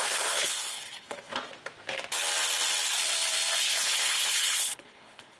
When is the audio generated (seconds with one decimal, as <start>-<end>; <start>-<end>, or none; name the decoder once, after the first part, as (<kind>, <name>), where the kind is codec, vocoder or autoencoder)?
0.0-1.3 (codec, HILCodec); 3.6-5.4